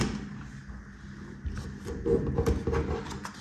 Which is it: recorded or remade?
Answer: recorded